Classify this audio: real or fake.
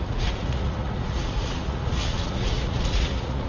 fake